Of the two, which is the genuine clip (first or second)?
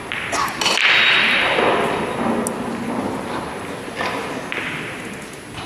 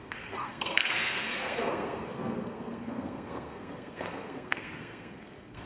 first